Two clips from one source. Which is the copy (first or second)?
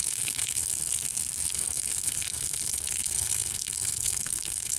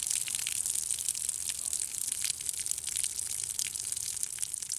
first